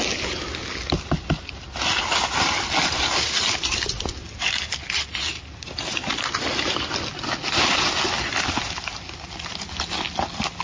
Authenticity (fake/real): real